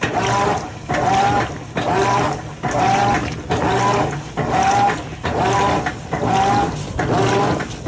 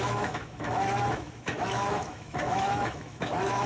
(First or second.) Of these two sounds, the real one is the first